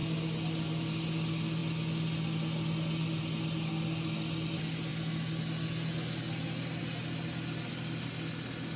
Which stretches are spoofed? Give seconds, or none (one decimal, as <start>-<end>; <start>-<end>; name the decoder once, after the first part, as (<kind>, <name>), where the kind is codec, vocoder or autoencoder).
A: none